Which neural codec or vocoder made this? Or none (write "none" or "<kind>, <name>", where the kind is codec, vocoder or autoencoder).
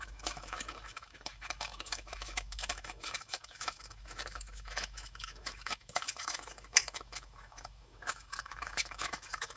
autoencoder, DAC-VAE